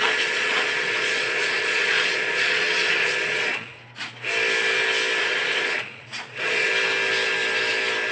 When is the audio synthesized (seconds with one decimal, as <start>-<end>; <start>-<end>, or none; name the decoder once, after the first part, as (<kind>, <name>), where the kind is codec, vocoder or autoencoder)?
0.0-3.7 (vocoder, Vocos); 5.2-6.7